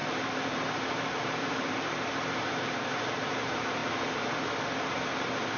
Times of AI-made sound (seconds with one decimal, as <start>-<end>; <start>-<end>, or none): 0.0-3.8; 4.8-5.6